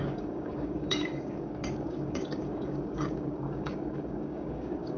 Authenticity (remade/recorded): remade